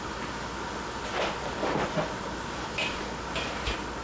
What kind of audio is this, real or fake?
real